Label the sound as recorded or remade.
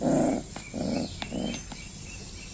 recorded